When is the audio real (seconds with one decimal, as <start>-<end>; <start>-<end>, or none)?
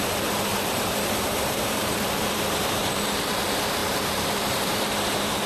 0.0-0.5; 3.4-3.8